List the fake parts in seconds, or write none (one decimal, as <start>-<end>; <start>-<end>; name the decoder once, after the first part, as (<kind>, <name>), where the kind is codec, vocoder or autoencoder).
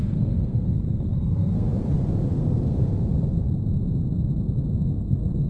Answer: 0.0-1.7 (codec, SNAC); 2.3-2.9; 5.0-5.5